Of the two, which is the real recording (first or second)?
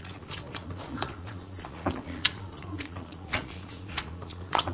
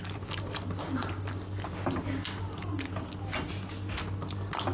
second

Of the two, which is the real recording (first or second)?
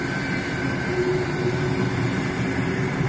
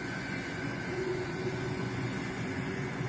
first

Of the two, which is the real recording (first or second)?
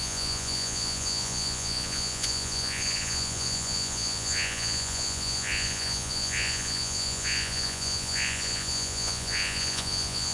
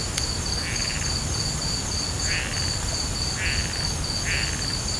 second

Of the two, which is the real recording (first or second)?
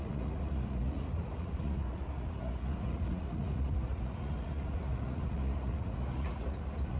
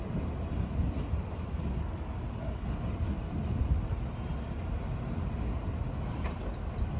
second